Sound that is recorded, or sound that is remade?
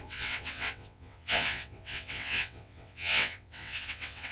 remade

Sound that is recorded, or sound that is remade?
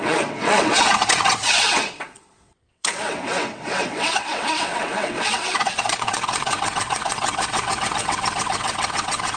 remade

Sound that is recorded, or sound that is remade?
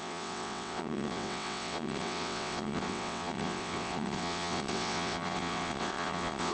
remade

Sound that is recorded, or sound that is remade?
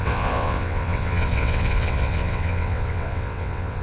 remade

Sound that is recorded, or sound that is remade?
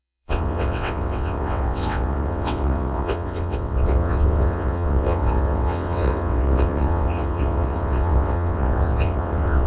remade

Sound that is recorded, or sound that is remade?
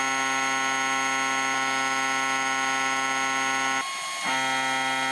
recorded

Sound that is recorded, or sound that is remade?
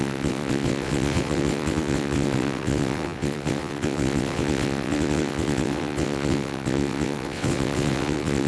remade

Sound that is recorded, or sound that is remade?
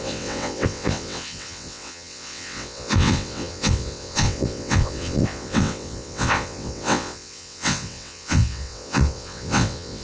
remade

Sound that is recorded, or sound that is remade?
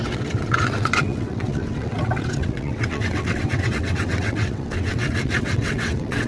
remade